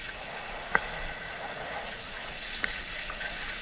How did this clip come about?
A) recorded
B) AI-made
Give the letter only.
B